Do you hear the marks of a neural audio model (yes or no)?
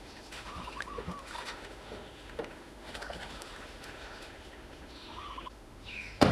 yes